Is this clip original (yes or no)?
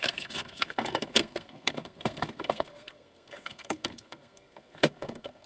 no